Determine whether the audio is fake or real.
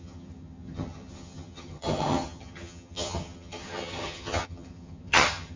fake